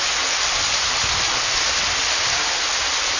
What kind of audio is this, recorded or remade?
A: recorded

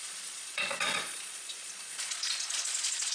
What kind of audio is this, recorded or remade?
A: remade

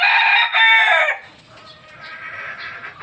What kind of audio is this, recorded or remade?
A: recorded